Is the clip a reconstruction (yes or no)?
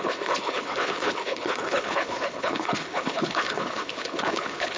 yes